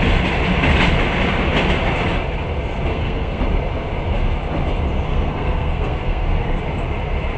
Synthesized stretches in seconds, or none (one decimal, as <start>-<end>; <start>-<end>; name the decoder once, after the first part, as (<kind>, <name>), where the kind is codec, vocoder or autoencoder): 2.9-3.4 (codec, SNAC); 5.1-6.6